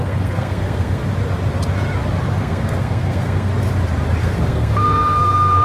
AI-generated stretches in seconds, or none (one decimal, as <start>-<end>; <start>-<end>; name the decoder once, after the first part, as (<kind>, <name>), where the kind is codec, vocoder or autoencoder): 0.0-1.0 (codec, SNAC); 2.3-3.5; 4.2-5.6